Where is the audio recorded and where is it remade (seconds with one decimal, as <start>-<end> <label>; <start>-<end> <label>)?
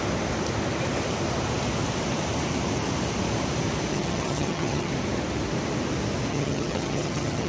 0.0-3.9 recorded; 3.9-4.9 remade; 4.9-6.3 recorded; 6.3-7.5 remade